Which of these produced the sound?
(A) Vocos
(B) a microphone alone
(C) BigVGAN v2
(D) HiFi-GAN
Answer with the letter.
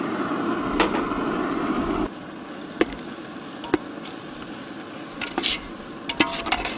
B